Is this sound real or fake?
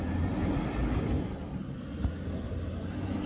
real